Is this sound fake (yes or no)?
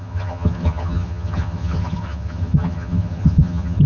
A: yes